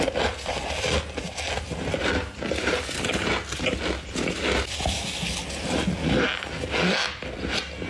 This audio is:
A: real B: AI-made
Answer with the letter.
A